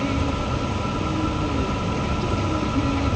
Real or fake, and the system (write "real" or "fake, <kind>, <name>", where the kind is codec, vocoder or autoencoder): real